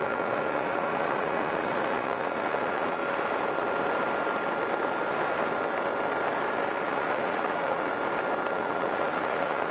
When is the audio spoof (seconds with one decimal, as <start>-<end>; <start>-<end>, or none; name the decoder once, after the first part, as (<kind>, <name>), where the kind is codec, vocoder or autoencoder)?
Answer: 0.0-3.0 (vocoder, Vocos); 6.8-7.9; 8.5-9.7